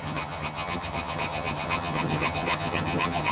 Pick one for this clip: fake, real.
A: fake